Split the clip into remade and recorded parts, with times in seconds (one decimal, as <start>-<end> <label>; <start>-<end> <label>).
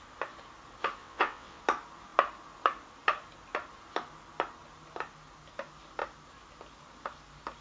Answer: 0.0-1.0 recorded; 1.0-1.6 remade; 1.6-7.6 recorded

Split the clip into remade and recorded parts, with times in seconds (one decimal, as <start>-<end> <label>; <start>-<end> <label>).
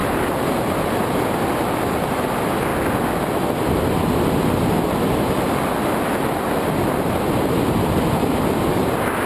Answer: 0.0-9.3 recorded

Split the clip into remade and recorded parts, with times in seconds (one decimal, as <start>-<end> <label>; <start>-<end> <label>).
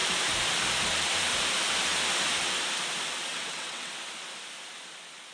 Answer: 0.0-3.3 recorded; 3.3-3.9 remade; 3.9-5.3 recorded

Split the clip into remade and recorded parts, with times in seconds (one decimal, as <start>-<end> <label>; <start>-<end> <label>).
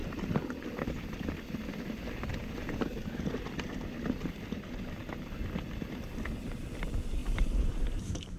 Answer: 0.0-7.2 recorded; 7.2-8.4 remade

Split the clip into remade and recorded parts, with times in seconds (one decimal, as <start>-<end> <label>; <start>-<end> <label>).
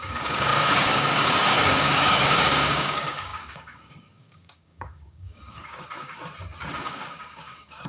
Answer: 0.0-6.3 remade; 6.3-6.8 recorded; 6.8-7.9 remade